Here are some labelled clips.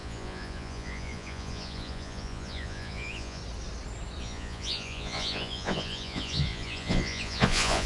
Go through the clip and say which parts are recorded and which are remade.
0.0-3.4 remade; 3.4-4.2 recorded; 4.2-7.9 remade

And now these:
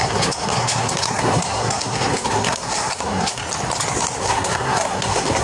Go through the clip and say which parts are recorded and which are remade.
0.0-3.4 remade; 3.4-4.2 recorded; 4.2-5.4 remade

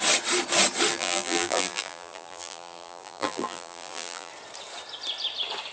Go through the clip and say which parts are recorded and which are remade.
0.0-0.9 recorded; 0.9-4.3 remade; 4.3-5.7 recorded

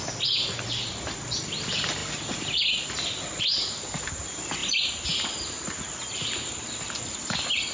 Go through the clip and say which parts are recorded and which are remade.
0.0-7.7 recorded

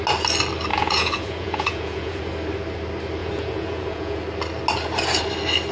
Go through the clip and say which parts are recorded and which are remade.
0.0-0.7 recorded; 0.7-2.2 remade; 2.2-3.2 recorded; 3.2-4.2 remade; 4.2-5.7 recorded

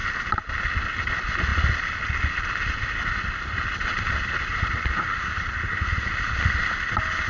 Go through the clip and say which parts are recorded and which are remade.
0.0-4.5 recorded; 4.5-5.2 remade; 5.2-7.3 recorded

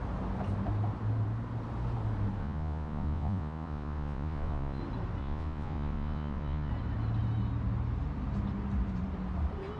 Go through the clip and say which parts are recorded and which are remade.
0.0-2.4 recorded; 2.4-4.8 remade; 4.8-5.2 recorded; 5.2-6.7 remade; 6.7-9.8 recorded